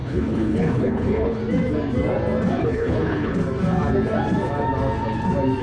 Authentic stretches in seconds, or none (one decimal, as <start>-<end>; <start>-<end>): 1.4-2.6; 3.4-5.6